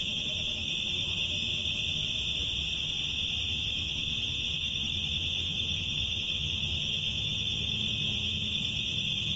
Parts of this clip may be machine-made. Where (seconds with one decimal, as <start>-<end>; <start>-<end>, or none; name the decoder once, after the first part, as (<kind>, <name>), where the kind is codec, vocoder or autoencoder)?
0.0-1.5 (autoencoder, DAC-VAE); 3.6-9.4